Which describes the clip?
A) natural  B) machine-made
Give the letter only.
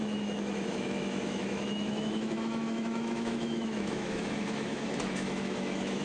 B